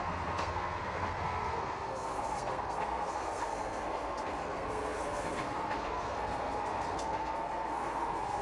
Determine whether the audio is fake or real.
fake